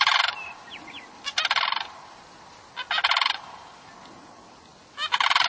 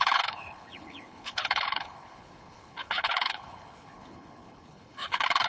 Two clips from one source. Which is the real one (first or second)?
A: first